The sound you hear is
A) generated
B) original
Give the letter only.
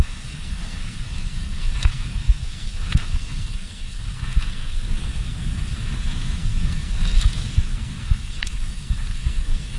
A